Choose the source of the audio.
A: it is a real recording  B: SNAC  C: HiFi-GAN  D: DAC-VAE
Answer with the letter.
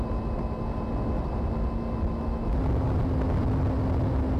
A